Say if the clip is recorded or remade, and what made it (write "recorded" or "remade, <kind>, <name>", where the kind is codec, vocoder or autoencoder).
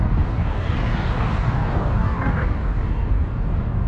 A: remade, codec, DAC